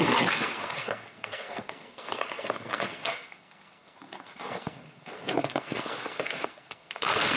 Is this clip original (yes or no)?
no